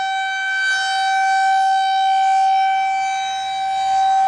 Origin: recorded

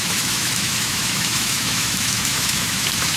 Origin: remade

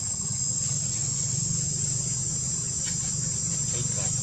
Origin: recorded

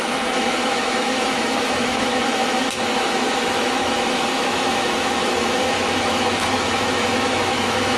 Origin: remade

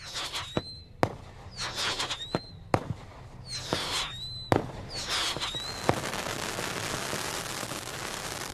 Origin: recorded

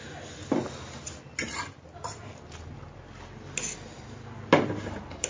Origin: recorded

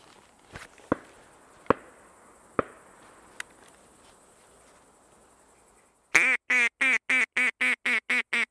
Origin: recorded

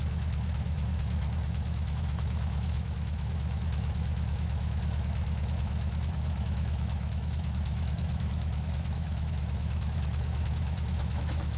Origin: remade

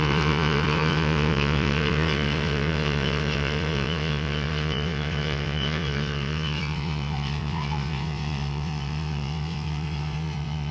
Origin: remade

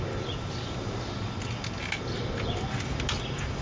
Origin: recorded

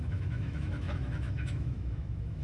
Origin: remade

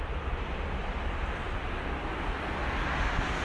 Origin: recorded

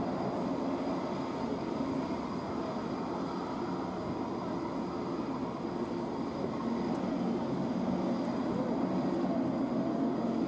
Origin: recorded